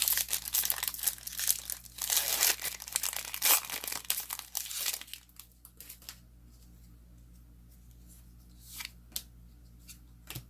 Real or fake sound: real